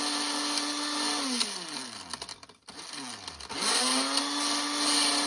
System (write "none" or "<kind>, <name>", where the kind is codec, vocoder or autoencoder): none